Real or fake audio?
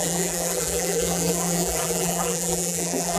fake